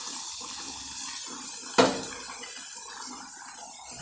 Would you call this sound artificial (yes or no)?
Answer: no